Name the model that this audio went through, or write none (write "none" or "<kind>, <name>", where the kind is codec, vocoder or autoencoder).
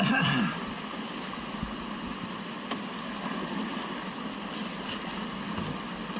none